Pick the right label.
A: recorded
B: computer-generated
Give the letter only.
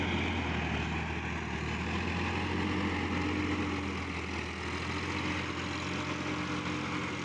A